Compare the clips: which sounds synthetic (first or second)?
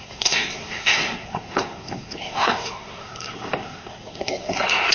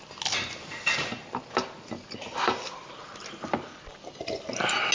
first